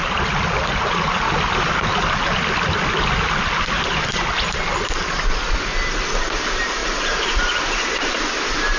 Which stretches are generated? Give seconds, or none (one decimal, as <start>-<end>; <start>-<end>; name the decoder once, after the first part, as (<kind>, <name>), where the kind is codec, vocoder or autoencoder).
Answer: 6.8-8.1 (vocoder, BigVGAN v2)

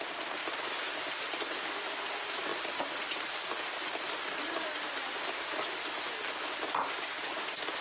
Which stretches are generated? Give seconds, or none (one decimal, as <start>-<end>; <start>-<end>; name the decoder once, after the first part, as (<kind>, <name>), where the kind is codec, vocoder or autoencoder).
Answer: none

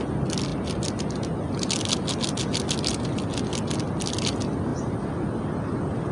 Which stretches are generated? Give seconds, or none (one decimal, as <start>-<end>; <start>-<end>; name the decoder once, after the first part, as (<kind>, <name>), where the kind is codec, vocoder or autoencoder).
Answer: none

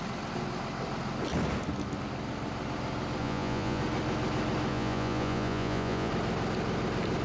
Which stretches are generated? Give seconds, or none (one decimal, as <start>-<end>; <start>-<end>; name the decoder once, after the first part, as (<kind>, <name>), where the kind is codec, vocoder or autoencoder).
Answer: 3.2-3.8 (vocoder, Vocos); 4.7-6.1

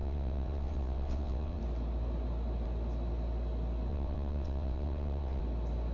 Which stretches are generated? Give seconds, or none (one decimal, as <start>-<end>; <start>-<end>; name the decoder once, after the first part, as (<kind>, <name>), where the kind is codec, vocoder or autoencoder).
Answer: 0.0-1.6 (vocoder, WaveNeXt); 3.9-5.4

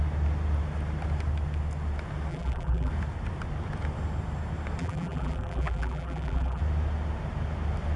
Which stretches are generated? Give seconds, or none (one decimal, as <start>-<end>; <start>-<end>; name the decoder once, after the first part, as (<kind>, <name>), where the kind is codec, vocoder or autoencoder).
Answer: 2.3-2.9 (vocoder, BigVGAN v2); 4.8-6.6

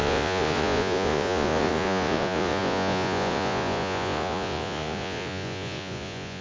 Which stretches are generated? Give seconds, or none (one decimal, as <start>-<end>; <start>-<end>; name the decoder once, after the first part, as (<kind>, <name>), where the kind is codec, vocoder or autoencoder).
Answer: 0.0-6.4 (vocoder, Vocos)